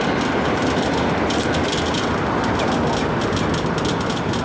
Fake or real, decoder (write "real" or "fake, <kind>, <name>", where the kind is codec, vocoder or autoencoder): real